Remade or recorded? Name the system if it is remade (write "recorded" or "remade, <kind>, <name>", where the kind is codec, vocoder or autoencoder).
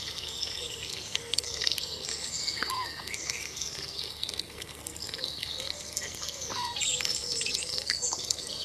remade, codec, SNAC